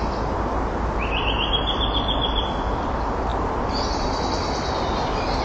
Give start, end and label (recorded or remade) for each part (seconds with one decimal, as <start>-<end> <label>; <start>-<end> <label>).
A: 0.0-5.4 recorded